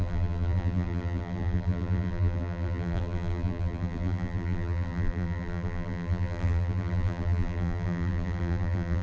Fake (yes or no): yes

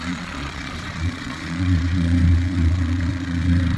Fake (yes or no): yes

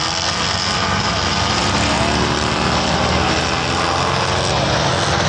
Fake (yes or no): no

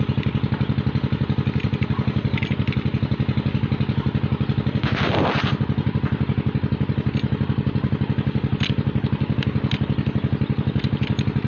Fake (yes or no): no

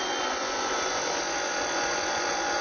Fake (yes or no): yes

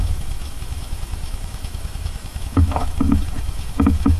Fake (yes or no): yes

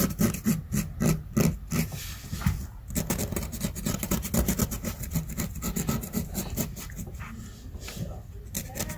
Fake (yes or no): no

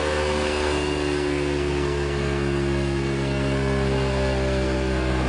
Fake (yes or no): yes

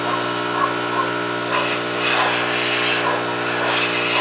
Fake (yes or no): no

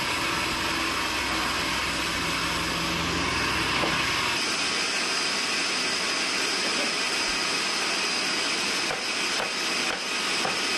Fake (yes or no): no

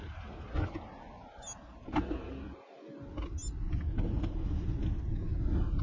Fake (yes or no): no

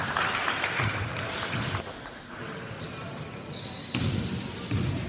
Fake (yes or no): no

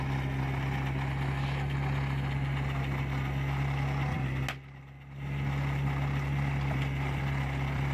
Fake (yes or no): no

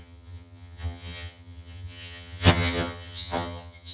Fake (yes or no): yes